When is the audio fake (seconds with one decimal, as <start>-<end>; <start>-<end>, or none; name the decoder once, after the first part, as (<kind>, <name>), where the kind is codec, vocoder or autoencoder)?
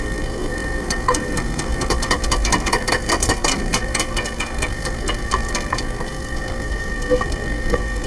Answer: 0.0-8.1 (codec, SNAC)